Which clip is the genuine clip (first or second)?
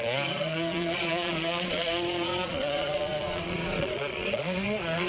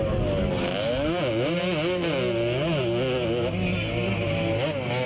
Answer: second